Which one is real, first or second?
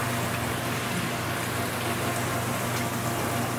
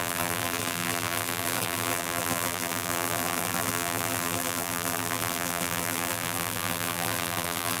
first